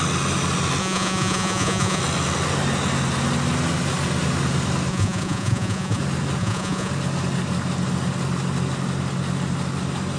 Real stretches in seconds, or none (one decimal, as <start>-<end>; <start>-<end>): 0.0-0.8; 2.0-4.9; 6.0-6.4; 6.9-10.2